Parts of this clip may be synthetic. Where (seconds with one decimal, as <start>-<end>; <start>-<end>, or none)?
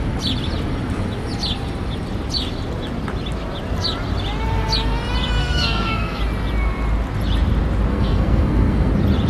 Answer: 5.4-6.2; 7.9-8.9